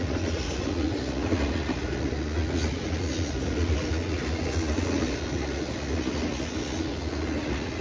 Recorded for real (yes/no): no